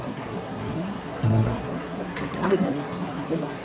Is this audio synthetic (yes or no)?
yes